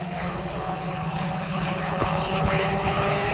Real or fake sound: fake